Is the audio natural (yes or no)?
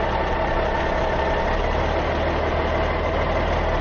yes